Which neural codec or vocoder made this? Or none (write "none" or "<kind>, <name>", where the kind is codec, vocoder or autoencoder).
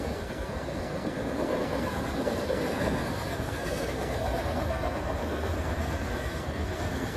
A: codec, SNAC